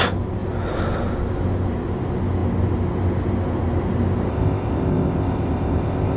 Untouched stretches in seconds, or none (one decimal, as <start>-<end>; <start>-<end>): 0.0-4.3